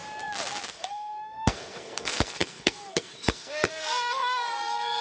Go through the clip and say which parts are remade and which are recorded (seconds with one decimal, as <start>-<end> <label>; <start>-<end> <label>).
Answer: 0.0-0.7 recorded; 0.7-5.0 remade